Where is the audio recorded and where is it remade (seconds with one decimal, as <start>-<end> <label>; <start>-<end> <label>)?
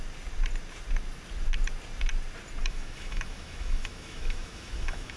0.0-2.6 recorded; 2.6-5.2 remade